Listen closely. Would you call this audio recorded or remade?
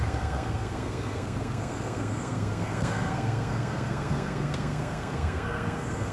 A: remade